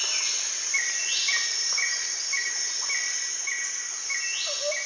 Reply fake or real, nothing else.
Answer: real